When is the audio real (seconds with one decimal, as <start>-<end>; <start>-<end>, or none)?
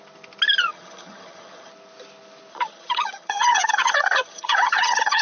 0.0-0.6; 1.7-2.5